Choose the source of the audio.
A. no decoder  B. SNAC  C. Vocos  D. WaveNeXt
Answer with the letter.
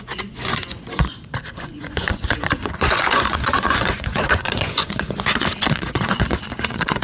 C